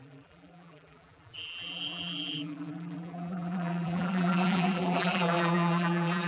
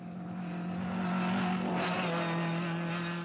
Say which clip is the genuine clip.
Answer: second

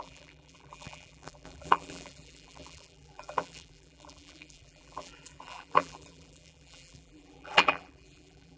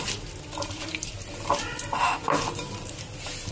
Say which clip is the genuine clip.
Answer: second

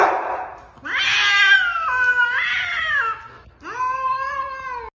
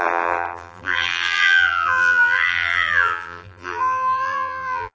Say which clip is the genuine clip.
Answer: first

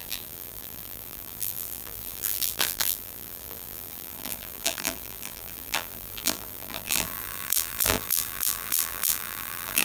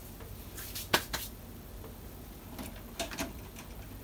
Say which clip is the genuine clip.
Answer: second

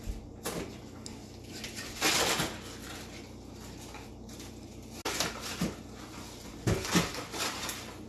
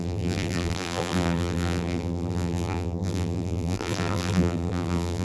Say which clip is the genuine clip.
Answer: first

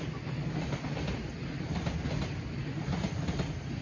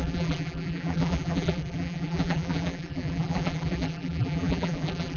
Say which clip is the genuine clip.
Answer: first